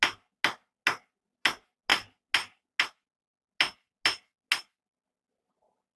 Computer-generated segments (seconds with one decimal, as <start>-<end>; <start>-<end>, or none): none